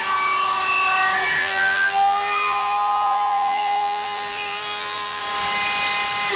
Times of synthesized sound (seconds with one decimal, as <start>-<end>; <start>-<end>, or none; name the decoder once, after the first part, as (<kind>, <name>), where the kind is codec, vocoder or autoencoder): 1.4-5.2 (vocoder, BigVGAN v2)